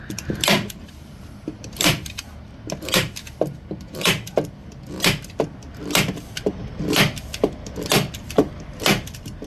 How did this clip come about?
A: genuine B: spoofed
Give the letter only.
A